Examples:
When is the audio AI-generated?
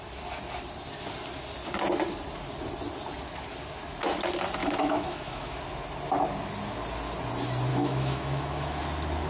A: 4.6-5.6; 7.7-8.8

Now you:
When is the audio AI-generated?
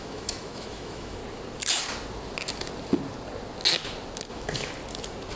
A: 0.0-1.2; 4.3-4.8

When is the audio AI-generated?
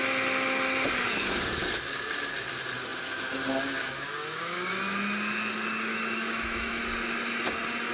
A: 4.2-4.7; 5.9-6.8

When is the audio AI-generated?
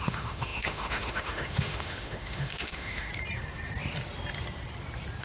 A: 0.0-3.1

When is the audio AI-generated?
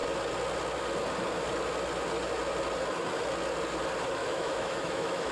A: 4.2-5.3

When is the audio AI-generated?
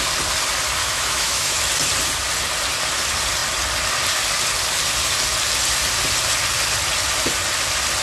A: 0.8-1.6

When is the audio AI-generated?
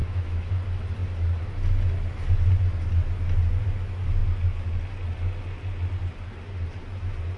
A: 0.0-0.5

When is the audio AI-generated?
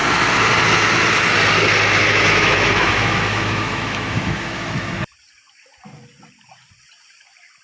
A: 2.1-4.9